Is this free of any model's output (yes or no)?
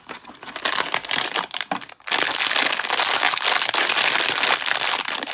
yes